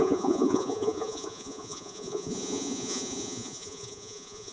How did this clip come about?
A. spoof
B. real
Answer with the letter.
A